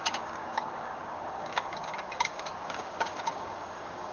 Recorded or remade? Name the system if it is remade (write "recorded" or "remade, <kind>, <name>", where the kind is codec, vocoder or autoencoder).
remade, codec, DAC